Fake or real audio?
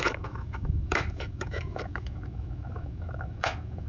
fake